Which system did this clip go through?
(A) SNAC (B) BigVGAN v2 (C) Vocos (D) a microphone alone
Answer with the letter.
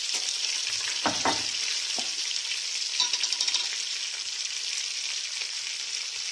D